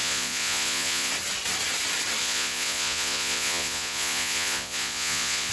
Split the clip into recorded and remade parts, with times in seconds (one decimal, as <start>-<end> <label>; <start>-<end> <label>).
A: 0.0-1.1 remade; 1.1-2.2 recorded; 2.2-5.5 remade